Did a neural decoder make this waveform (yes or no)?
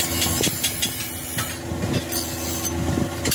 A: no